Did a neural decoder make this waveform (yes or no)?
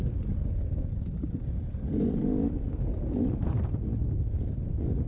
no